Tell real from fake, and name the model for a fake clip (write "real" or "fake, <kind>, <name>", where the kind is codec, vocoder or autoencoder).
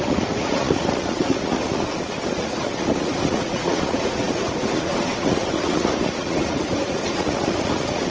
fake, vocoder, Vocos